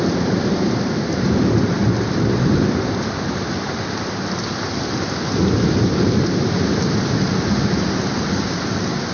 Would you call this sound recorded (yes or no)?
yes